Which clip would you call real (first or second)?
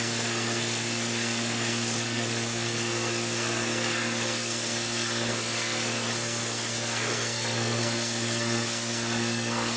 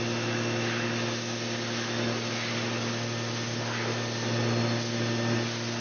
second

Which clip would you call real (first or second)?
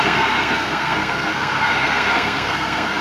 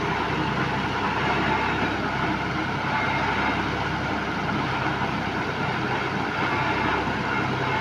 second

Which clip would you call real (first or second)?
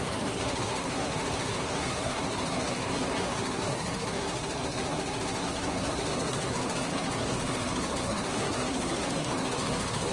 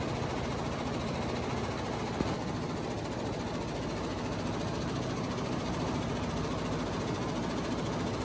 second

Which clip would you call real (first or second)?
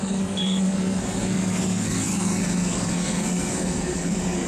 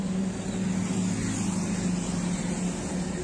second